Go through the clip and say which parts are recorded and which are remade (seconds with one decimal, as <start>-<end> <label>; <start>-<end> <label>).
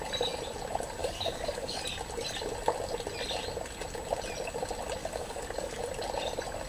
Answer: 0.0-1.0 recorded; 1.0-1.8 remade; 1.8-5.0 recorded; 5.0-5.8 remade; 5.8-6.7 recorded